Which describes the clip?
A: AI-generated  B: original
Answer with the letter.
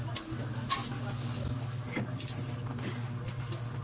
B